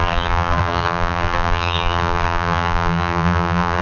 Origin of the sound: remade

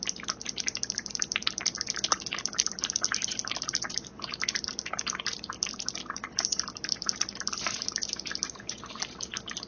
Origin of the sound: remade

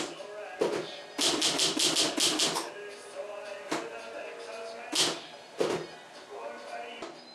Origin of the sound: recorded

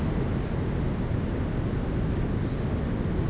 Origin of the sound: recorded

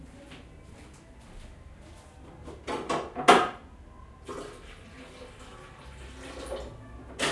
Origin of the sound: recorded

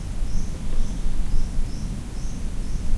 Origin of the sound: recorded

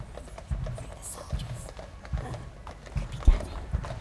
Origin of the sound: recorded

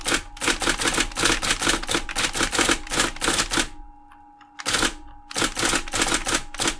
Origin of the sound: recorded